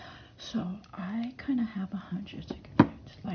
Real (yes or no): yes